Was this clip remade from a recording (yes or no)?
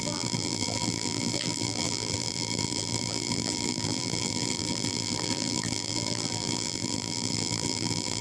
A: yes